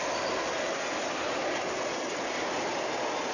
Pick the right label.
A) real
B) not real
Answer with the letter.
A